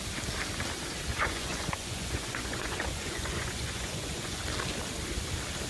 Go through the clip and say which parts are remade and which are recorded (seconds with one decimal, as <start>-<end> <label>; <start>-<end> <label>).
0.0-1.1 recorded; 1.1-4.4 remade; 4.4-5.7 recorded